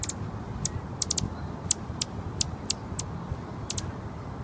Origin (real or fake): real